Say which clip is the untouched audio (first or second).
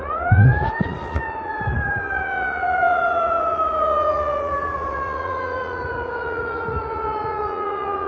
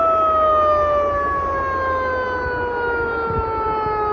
second